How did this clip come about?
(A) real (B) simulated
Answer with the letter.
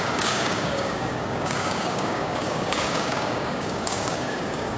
B